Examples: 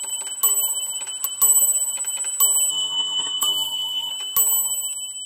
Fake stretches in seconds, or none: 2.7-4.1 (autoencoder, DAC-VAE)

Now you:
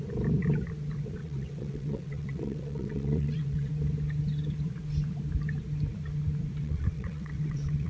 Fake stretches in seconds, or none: 1.2-3.7 (vocoder, WaveNeXt); 6.6-7.9

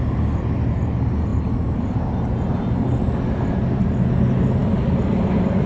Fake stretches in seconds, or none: none

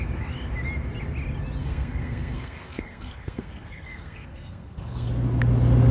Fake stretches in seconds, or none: 1.6-5.1 (codec, SNAC)

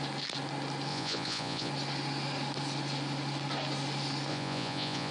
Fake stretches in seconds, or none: 0.9-1.7 (vocoder, Vocos); 4.3-5.1

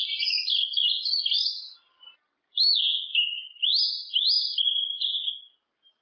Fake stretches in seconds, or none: none

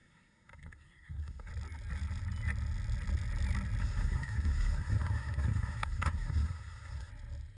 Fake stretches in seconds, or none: 0.0-1.5 (codec, SNAC); 3.8-7.1

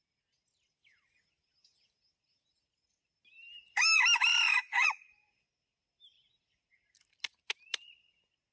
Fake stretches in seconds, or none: 4.3-5.1 (vocoder, Vocos)